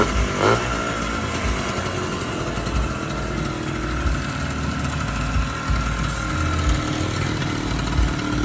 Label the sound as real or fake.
real